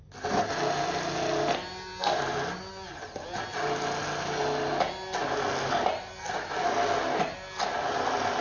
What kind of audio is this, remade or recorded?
recorded